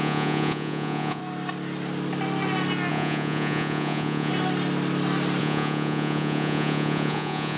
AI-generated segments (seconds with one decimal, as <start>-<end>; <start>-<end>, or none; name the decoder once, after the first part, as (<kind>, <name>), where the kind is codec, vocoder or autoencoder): 0.0-1.2 (vocoder, Vocos); 2.9-4.3; 5.4-7.6